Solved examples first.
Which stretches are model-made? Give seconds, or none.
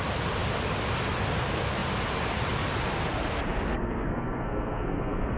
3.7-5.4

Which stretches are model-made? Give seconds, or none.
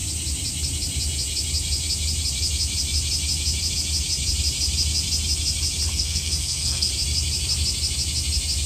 5.9-6.9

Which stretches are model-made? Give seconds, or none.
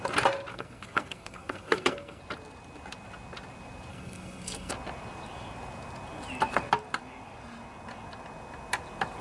0.5-2.2; 3.9-4.7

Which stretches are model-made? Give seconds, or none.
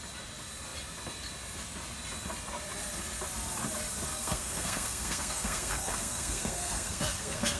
4.1-7.6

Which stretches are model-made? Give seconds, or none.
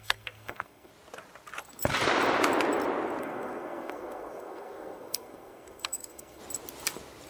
0.0-0.9; 3.2-6.4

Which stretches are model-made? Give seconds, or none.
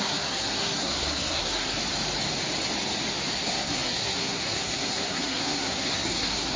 0.0-1.8; 3.3-6.6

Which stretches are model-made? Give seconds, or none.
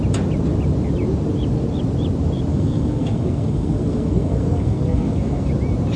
2.5-5.5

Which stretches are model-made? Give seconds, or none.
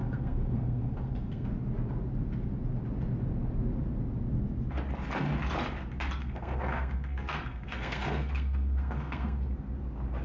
0.0-1.5; 6.2-9.4